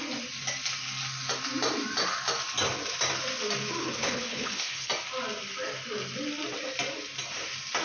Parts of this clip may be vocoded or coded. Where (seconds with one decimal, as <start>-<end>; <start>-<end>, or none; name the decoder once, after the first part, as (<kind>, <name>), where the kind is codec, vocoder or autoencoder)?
3.8-4.9 (codec, HILCodec)